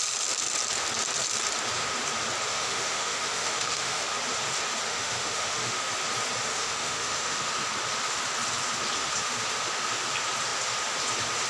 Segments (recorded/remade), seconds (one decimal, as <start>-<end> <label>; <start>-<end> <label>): 0.0-2.5 recorded; 2.5-4.0 remade; 4.0-4.9 recorded; 4.9-5.9 remade; 5.9-6.5 recorded; 6.5-7.5 remade; 7.5-11.5 recorded